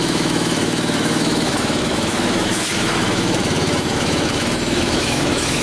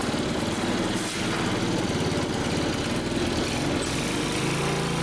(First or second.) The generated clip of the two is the first